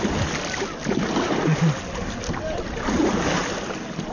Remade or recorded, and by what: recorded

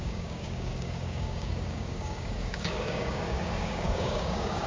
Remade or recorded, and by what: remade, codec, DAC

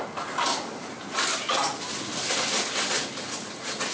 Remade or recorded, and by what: recorded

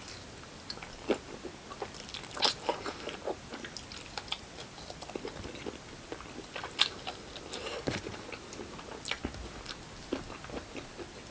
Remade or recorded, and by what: recorded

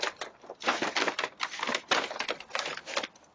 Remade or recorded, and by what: recorded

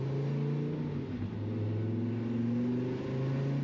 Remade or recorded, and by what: recorded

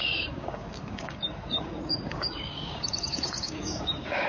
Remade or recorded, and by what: remade, codec, DAC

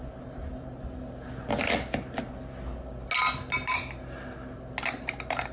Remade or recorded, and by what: recorded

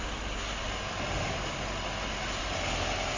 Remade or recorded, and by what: recorded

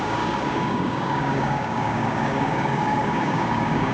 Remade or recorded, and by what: remade, codec, DAC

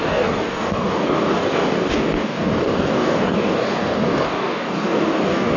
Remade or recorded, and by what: remade, codec, DAC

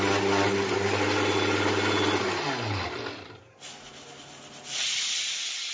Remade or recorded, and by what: recorded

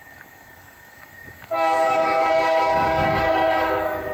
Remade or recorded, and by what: remade, codec, DAC